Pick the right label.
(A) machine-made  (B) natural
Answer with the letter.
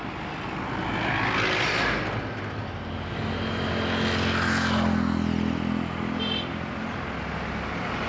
B